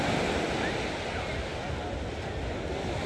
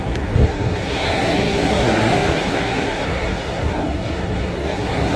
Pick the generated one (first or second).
second